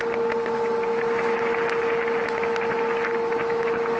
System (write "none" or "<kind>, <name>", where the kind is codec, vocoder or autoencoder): none